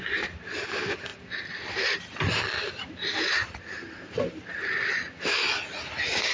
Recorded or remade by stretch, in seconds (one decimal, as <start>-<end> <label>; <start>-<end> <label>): 0.0-6.3 recorded